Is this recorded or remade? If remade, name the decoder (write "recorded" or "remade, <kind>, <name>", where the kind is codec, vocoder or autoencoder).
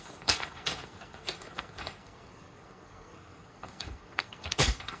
remade, codec, SNAC